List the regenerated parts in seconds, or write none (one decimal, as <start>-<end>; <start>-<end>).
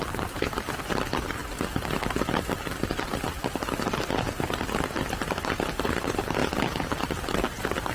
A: 0.0-1.4; 6.0-6.4; 7.1-7.9